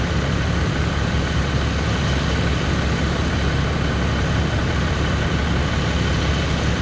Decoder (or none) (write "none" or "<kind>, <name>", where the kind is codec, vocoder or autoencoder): none